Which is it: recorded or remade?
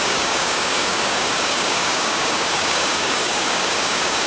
remade